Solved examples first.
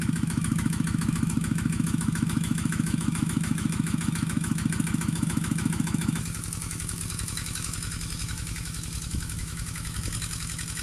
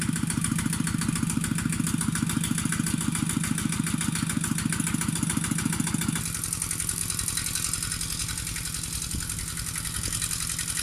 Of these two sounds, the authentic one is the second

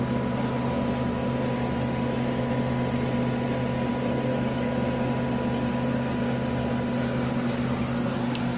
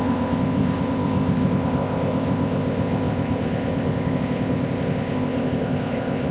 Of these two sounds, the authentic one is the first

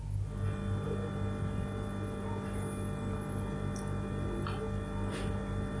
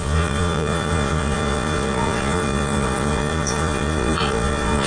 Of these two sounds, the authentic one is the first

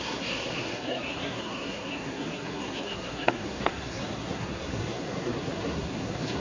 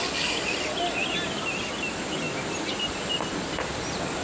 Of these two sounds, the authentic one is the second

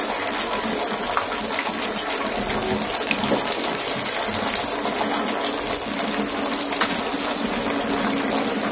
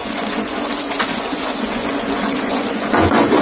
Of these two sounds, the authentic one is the first